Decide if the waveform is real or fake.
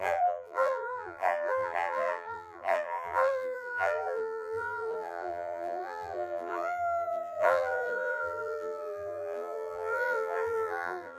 fake